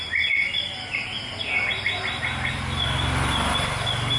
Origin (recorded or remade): recorded